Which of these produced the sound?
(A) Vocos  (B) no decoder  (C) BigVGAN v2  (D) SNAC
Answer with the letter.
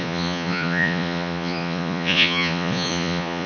A